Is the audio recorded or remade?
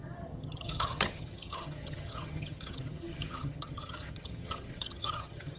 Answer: remade